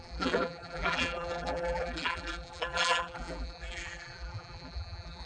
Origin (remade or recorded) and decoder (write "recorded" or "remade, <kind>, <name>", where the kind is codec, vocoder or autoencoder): remade, vocoder, BigVGAN v2